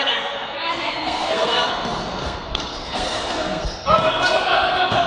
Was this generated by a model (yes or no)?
yes